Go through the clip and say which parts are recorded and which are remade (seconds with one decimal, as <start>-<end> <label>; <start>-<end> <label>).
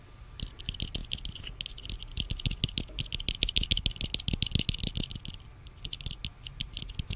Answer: 0.0-7.2 recorded